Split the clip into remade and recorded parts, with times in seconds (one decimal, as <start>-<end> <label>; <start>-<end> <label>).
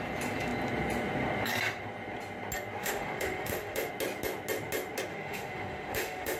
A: 0.0-2.8 recorded; 2.8-3.9 remade; 3.9-5.1 recorded; 5.1-6.4 remade